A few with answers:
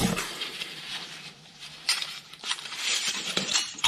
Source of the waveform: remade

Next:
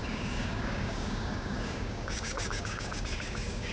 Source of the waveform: remade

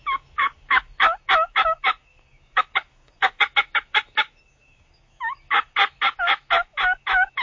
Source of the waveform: remade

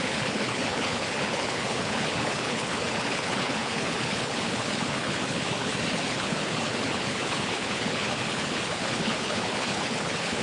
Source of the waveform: remade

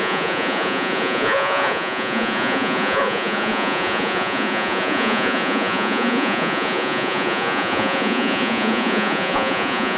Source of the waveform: remade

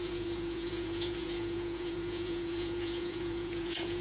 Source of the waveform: remade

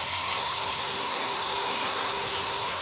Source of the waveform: remade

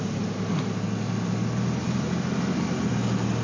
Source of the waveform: recorded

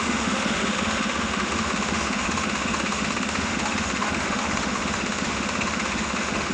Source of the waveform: remade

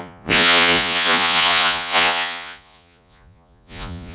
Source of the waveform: remade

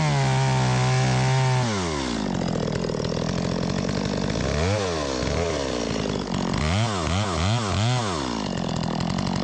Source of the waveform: recorded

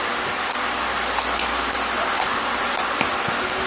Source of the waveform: recorded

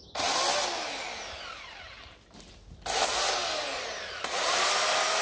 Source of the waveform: recorded